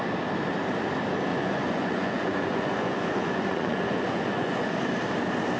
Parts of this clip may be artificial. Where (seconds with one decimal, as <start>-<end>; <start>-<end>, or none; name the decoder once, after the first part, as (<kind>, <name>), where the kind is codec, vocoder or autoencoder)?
1.3-4.7 (vocoder, Vocos)